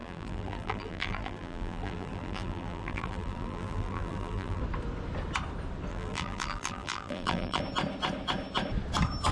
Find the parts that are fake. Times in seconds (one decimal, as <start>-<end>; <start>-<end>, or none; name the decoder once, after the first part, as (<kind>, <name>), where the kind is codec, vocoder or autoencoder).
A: 0.0-4.6 (vocoder, BigVGAN v2); 5.9-7.6